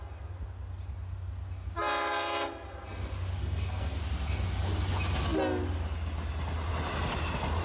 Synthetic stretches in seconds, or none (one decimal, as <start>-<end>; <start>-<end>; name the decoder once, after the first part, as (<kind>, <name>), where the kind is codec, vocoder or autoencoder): 3.4-4.0 (codec, SNAC)